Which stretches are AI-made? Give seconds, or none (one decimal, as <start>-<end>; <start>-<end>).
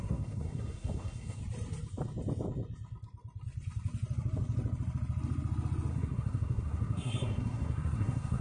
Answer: 0.0-1.4; 5.9-8.4